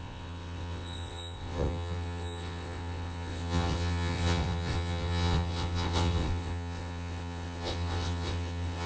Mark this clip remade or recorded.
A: remade